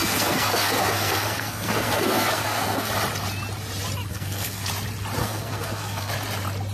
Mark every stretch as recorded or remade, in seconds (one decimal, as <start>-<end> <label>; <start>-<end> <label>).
0.0-2.9 remade; 2.9-4.1 recorded; 4.1-4.7 remade; 4.7-5.2 recorded; 5.2-6.1 remade; 6.1-6.7 recorded